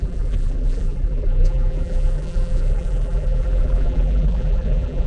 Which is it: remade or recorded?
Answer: remade